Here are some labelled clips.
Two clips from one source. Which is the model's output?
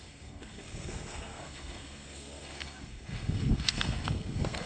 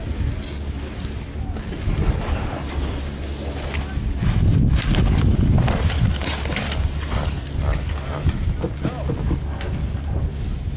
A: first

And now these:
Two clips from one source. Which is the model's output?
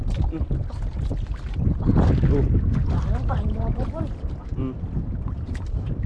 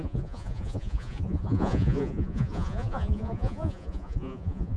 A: second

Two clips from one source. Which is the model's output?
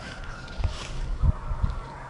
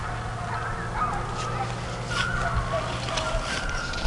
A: first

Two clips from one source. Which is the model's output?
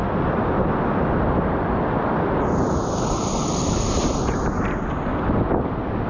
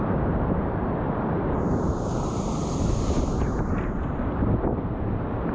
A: second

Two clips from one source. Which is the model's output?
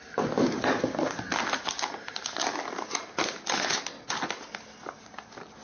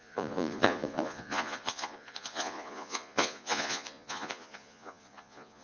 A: second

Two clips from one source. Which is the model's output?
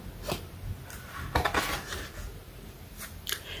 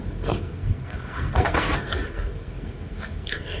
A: second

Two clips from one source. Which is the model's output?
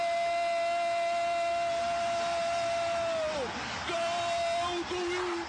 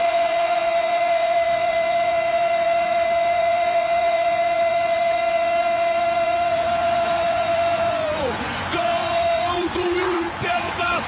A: second